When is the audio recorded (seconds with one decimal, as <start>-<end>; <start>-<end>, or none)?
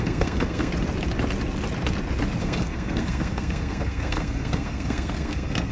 0.7-2.4